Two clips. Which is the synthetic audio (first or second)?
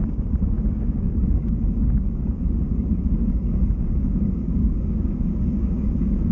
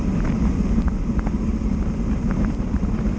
first